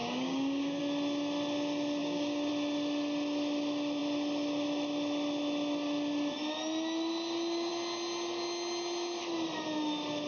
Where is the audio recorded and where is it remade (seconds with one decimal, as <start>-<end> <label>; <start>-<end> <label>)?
0.0-0.8 remade; 0.8-2.0 recorded; 2.0-2.5 remade; 2.5-10.3 recorded

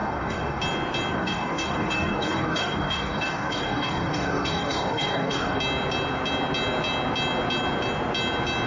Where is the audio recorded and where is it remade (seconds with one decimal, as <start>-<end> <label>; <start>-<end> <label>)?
0.0-0.6 remade; 0.6-1.1 recorded; 1.1-5.6 remade; 5.6-8.7 recorded